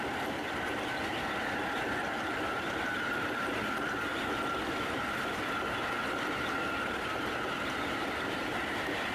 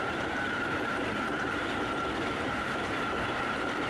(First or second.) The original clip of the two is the first